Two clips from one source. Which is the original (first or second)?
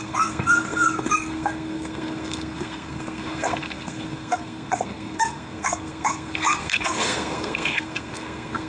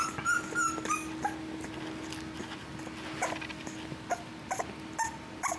second